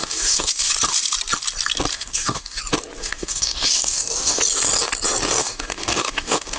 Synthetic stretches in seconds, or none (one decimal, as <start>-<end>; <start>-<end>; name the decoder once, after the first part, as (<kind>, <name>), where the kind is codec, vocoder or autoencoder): 0.0-0.7 (codec, DAC); 1.9-2.6; 3.0-4.4; 5.4-6.6